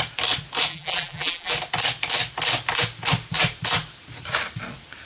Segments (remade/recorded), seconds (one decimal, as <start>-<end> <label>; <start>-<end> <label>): 0.0-0.7 recorded; 0.7-1.5 remade; 1.5-5.1 recorded